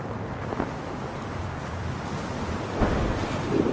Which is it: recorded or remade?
recorded